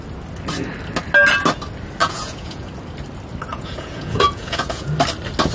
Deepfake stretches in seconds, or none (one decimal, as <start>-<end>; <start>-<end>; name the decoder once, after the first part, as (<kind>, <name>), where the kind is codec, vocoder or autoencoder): 2.0-2.7 (vocoder, Vocos); 3.5-4.9